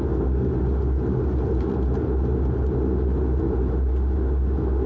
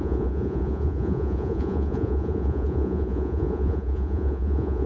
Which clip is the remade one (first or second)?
second